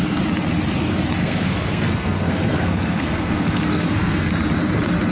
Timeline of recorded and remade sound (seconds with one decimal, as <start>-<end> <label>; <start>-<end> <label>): 0.0-1.2 recorded; 1.2-4.3 remade; 4.3-5.1 recorded